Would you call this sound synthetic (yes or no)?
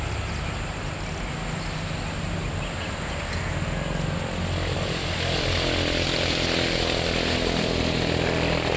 no